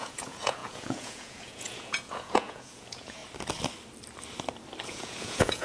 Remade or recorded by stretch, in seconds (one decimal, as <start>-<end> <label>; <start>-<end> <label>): 0.0-3.2 remade; 3.2-4.8 recorded; 4.8-5.6 remade